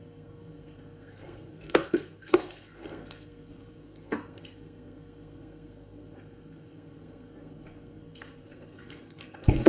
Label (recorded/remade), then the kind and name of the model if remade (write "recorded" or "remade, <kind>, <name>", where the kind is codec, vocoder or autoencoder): remade, codec, SNAC